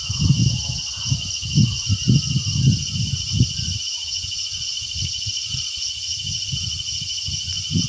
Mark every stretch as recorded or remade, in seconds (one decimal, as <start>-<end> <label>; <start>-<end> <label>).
0.0-0.4 remade; 0.4-3.0 recorded; 3.0-4.7 remade; 4.7-6.5 recorded; 6.5-7.9 remade